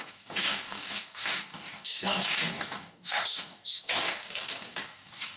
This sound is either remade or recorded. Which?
remade